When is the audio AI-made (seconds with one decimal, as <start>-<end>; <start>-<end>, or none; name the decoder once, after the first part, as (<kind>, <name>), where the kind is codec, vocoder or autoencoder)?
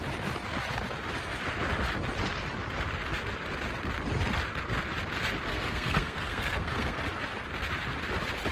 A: 5.5-7.0 (codec, SNAC)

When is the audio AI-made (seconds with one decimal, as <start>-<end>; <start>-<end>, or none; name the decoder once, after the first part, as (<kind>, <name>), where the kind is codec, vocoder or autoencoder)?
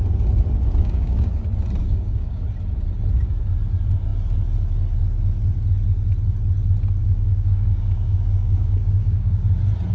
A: 0.8-1.3 (codec, DAC); 1.8-2.4; 7.0-9.5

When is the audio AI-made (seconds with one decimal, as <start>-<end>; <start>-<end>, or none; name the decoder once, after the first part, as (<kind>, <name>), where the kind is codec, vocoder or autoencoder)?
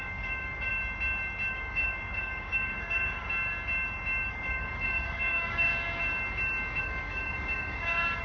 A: 0.0-0.7 (codec, DAC); 1.5-3.3; 4.3-5.7; 6.8-8.2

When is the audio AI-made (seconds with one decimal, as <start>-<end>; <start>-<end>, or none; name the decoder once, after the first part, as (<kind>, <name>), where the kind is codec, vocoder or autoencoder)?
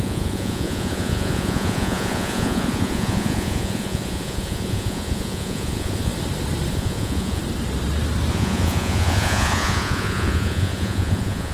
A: 0.0-6.1 (vocoder, Vocos); 6.7-7.4; 8.3-11.5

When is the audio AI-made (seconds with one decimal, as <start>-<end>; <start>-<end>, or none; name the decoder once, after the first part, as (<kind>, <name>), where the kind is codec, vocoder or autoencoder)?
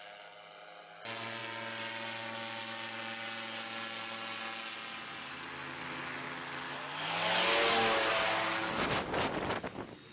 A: none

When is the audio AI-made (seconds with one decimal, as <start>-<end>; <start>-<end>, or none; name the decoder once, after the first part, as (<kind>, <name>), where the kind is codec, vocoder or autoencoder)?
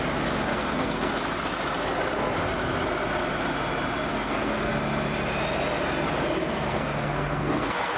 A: 0.5-1.1 (codec, SNAC); 4.1-4.7; 6.4-8.0